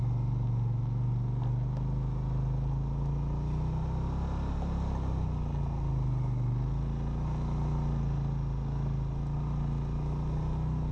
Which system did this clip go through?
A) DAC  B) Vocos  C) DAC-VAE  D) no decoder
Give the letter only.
D